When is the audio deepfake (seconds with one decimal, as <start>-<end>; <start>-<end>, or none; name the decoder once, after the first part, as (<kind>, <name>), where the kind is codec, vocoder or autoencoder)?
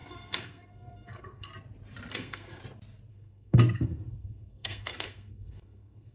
0.0-1.5 (codec, SNAC); 2.1-2.6; 3.1-6.1